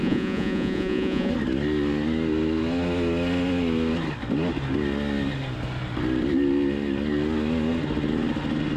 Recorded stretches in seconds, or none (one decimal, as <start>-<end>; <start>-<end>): 1.3-8.8